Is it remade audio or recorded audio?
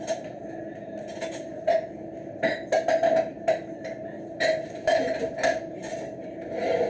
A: recorded